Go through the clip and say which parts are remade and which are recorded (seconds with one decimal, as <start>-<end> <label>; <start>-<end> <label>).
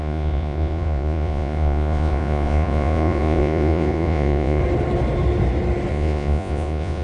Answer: 0.0-4.6 remade; 4.6-5.9 recorded; 5.9-7.0 remade